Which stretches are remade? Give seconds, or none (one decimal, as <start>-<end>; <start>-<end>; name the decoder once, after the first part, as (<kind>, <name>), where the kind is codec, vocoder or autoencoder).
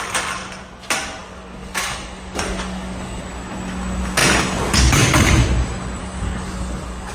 1.2-3.2 (codec, DAC); 6.0-7.1